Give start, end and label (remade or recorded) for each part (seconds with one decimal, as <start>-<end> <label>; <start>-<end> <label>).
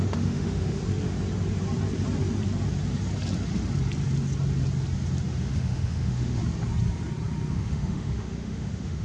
0.0-0.8 remade; 0.8-5.4 recorded; 5.4-6.4 remade; 6.4-7.5 recorded; 7.5-9.0 remade